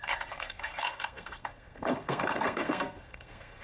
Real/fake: fake